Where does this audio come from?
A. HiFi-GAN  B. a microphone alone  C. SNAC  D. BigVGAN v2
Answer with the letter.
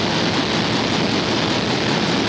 B